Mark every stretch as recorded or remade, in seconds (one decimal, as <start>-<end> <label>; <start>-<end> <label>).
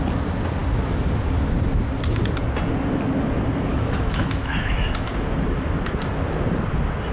0.0-3.7 recorded; 3.7-5.1 remade; 5.1-7.1 recorded